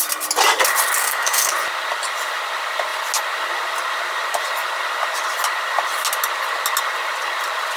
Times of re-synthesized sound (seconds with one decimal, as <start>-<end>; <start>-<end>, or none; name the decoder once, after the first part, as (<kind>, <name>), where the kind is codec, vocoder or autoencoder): 1.0-1.5 (codec, SNAC)